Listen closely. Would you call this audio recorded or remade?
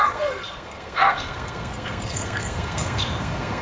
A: remade